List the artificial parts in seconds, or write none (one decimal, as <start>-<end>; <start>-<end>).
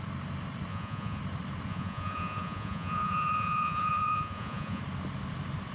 0.7-1.2; 1.7-4.8